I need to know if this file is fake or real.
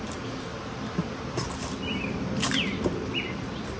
real